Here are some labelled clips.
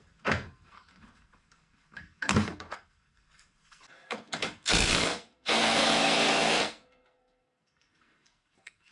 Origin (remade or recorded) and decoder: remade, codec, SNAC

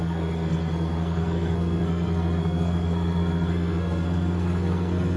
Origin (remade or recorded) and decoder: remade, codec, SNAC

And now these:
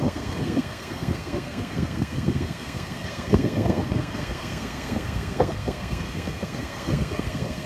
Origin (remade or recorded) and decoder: remade, codec, SNAC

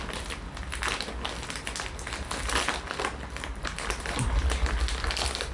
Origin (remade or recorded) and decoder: recorded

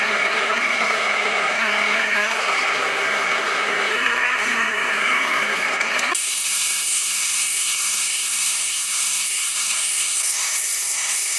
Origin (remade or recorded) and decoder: remade, codec, SNAC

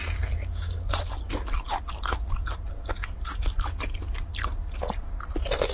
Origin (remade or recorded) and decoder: recorded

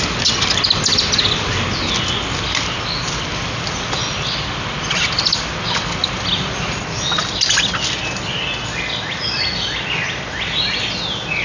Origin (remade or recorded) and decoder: recorded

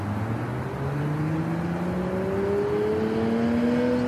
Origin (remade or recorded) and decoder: recorded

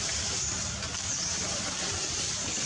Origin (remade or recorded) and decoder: recorded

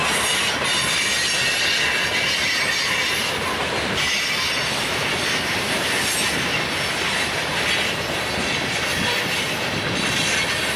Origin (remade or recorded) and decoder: recorded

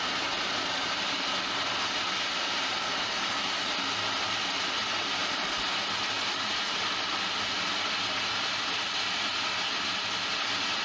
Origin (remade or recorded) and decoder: recorded